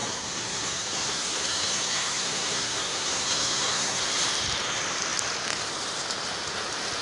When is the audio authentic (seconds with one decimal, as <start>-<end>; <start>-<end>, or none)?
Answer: 4.0-7.0